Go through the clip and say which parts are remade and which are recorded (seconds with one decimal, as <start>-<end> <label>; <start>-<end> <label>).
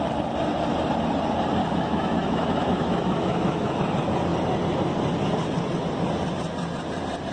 0.0-1.6 recorded; 1.6-3.8 remade; 3.8-7.3 recorded